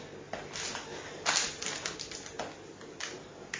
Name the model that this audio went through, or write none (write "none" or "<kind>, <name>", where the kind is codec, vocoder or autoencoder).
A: none